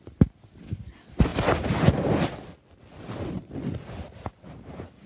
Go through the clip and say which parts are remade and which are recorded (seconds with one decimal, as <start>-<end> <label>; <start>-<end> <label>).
0.0-5.1 recorded